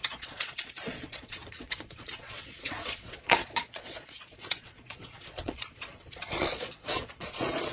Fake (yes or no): yes